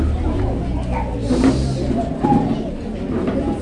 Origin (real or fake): real